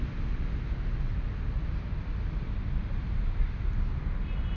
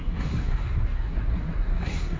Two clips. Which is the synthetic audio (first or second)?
second